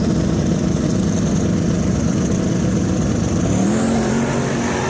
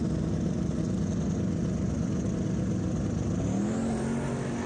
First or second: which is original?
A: second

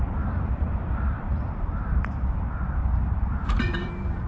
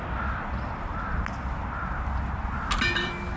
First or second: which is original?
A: second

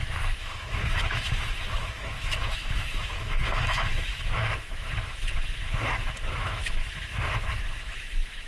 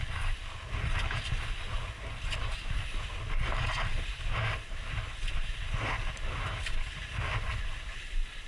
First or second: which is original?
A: second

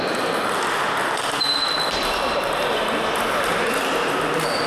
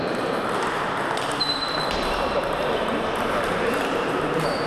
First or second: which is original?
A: first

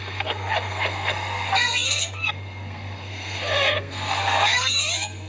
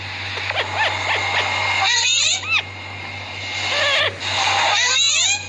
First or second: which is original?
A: second